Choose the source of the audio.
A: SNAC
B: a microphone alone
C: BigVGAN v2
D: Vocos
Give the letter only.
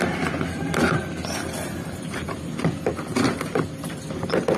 B